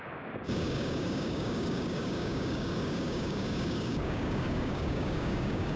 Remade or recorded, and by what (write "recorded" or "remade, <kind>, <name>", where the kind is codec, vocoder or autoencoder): remade, codec, DAC